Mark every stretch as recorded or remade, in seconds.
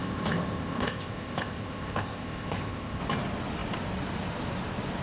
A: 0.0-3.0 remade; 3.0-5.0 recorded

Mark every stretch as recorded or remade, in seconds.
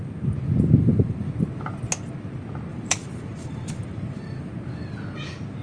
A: 0.0-0.8 recorded; 0.8-1.3 remade; 1.3-2.7 recorded; 2.7-4.5 remade; 4.5-5.6 recorded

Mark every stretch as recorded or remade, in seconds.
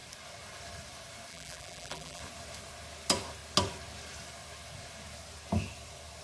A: 0.0-1.3 recorded; 1.3-2.2 remade; 2.2-6.2 recorded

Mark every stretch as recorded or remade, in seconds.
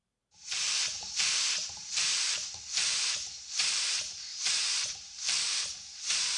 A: 0.0-3.8 remade; 3.8-4.3 recorded; 4.3-5.5 remade; 5.5-6.4 recorded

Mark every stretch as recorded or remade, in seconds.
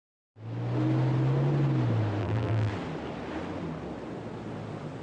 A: 0.0-2.2 recorded; 2.2-2.7 remade; 2.7-5.0 recorded